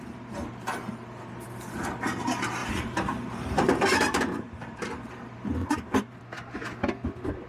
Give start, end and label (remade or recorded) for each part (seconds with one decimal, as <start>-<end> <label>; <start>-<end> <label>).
0.0-2.6 recorded; 2.6-5.2 remade; 5.2-7.5 recorded